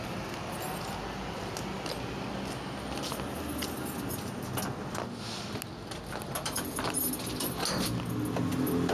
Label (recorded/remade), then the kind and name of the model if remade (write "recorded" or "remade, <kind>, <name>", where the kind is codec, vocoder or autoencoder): recorded